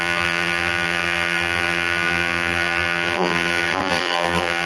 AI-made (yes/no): yes